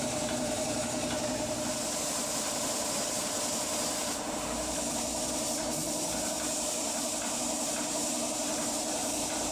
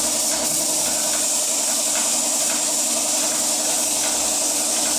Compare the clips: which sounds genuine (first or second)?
second